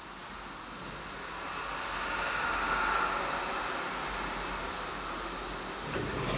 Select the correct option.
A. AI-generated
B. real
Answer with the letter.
B